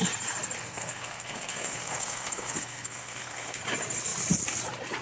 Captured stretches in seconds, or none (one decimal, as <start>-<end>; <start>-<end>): 0.0-0.6; 3.6-5.0